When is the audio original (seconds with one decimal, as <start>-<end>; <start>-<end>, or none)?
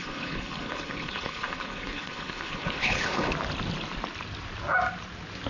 3.3-5.5